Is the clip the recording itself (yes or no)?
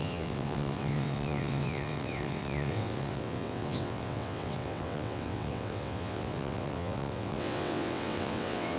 no